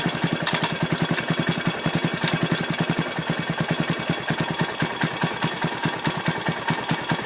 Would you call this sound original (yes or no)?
yes